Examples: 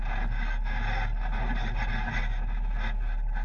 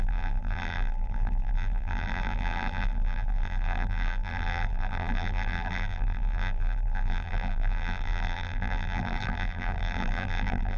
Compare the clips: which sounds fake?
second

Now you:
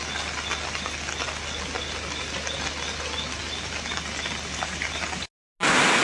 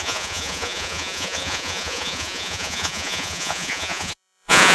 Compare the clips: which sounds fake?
second